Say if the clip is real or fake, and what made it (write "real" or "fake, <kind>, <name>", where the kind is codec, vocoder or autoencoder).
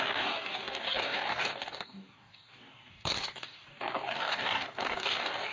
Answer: fake, codec, DAC